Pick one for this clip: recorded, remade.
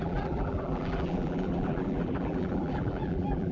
remade